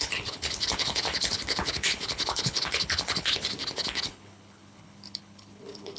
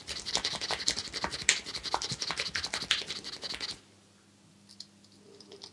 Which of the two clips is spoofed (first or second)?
first